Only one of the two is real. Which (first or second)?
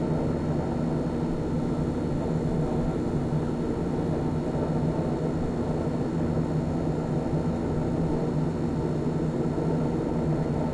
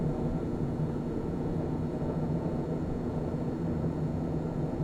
first